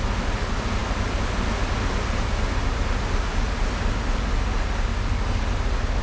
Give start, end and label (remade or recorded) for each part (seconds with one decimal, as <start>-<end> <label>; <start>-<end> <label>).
0.0-4.9 recorded; 4.9-5.4 remade; 5.4-6.0 recorded